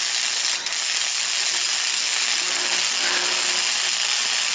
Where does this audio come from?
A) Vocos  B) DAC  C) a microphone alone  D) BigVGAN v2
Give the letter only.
C